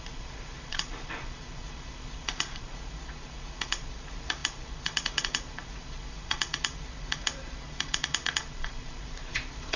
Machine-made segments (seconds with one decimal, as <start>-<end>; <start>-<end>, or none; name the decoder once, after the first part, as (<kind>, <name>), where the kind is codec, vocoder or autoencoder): 0.0-9.8 (vocoder, Vocos)